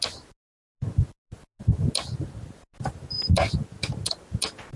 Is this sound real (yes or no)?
yes